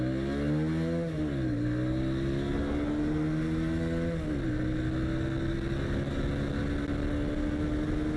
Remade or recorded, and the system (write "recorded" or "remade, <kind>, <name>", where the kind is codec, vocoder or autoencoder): recorded